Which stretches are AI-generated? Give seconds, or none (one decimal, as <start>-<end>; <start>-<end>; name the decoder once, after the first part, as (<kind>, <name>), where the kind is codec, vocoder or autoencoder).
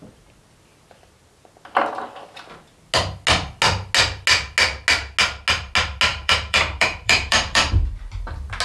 6.1-7.7 (vocoder, BigVGAN v2)